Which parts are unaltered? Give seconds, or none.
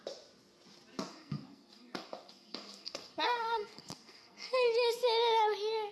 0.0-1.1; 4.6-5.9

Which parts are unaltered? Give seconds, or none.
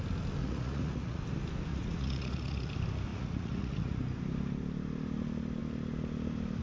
0.0-0.4; 1.2-1.7; 2.7-3.1; 4.0-6.6